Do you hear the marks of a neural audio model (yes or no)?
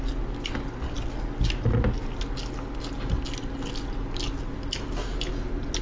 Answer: no